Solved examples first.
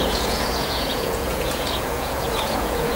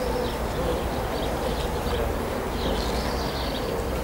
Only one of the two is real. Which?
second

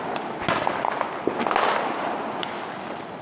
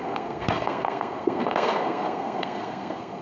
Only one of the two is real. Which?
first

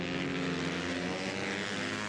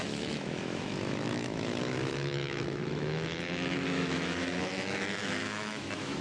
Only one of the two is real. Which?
first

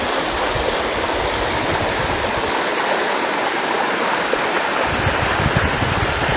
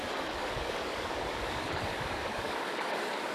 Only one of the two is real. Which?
first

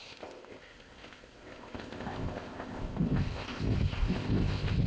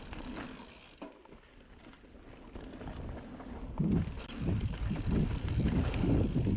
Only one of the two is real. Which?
second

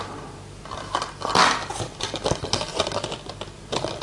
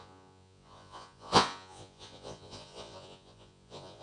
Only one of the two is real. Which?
first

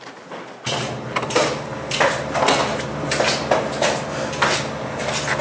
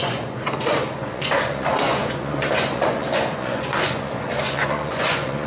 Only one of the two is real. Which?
first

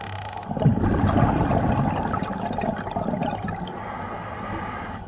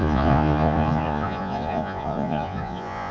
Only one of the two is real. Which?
first